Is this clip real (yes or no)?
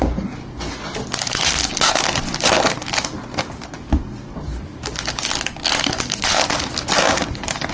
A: yes